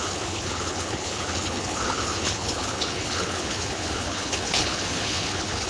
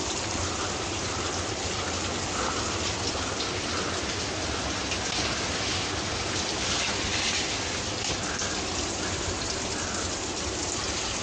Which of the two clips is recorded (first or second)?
second